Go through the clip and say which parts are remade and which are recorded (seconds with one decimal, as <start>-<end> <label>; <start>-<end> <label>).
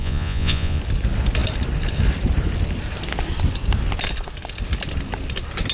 0.0-0.8 remade; 0.8-5.7 recorded